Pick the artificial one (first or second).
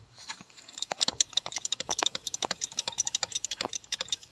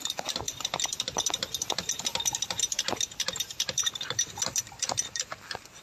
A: first